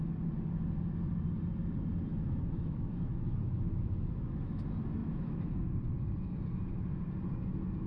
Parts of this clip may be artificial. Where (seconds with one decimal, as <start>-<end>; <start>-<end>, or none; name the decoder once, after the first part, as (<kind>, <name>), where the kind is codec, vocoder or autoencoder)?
2.1-4.6 (autoencoder, DAC-VAE); 5.0-5.5